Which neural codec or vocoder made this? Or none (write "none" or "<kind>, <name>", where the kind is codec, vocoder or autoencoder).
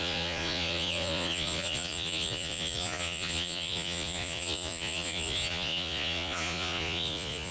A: vocoder, Vocos